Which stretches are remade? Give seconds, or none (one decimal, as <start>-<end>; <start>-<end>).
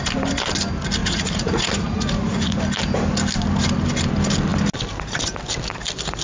1.0-2.6